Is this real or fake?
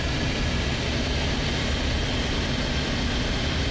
real